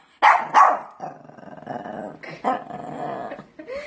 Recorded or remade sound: recorded